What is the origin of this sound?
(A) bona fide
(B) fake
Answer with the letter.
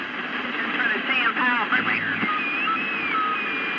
A